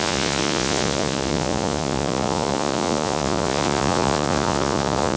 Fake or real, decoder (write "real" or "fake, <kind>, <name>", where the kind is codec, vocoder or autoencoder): fake, vocoder, Vocos